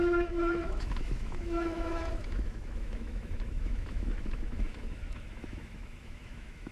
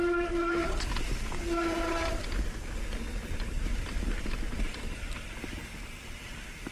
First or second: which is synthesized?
first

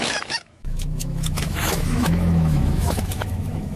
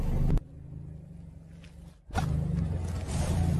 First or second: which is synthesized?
first